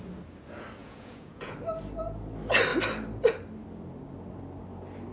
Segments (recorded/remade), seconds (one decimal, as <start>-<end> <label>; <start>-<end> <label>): 0.0-0.8 recorded; 0.8-1.5 remade; 1.5-5.1 recorded